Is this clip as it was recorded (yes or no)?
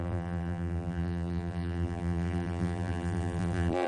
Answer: no